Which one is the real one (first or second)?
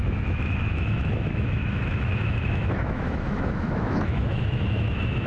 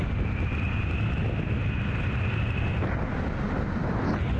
second